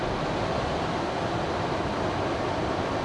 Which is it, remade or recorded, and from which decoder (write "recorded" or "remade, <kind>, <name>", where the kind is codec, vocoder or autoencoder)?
recorded